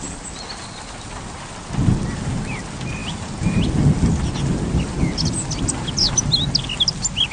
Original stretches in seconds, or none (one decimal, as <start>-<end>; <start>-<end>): 0.0-3.0; 3.6-7.3